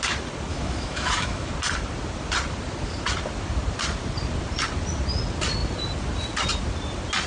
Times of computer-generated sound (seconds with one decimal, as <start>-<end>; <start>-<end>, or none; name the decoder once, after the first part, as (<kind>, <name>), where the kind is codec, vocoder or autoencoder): 0.5-1.5 (autoencoder, DAC-VAE)